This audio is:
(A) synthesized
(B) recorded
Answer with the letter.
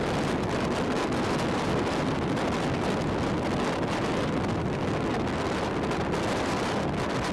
B